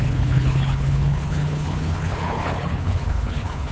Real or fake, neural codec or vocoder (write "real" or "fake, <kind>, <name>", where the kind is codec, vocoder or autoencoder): fake, codec, HILCodec